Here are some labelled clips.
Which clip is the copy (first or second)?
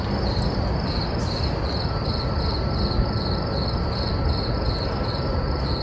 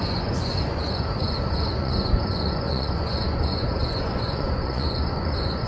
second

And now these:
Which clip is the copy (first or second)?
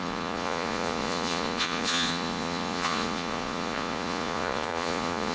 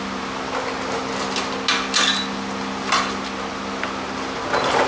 first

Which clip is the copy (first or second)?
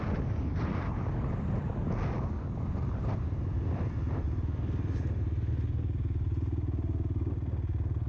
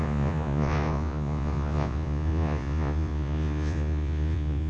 second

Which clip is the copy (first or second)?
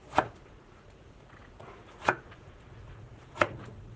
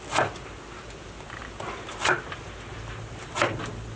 first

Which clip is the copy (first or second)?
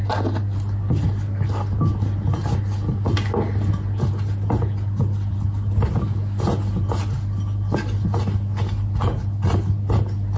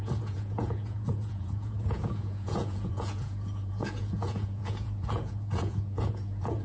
second